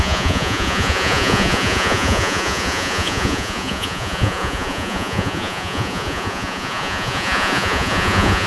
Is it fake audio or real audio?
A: fake